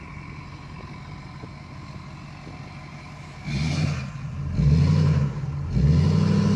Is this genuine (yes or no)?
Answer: yes